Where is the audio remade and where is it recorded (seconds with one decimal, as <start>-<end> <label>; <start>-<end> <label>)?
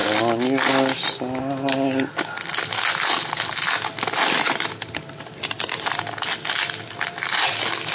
0.0-7.9 recorded